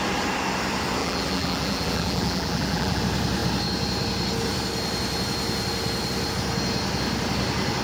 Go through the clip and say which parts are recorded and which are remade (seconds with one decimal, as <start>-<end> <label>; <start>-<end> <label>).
0.0-1.0 recorded; 1.0-3.0 remade; 3.0-7.8 recorded